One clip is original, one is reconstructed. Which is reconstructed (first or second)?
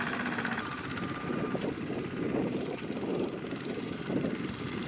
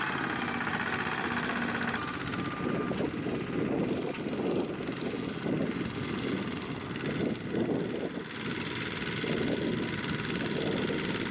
first